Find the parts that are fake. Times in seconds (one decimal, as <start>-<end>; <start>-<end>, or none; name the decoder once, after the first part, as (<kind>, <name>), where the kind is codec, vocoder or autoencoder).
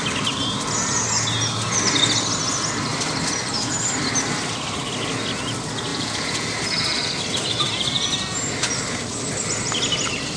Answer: 5.9-6.5 (vocoder, Vocos)